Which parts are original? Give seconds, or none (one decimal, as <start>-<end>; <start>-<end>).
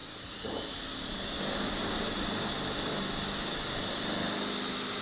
0.0-5.0